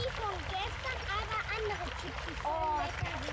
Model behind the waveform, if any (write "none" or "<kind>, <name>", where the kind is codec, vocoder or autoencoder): none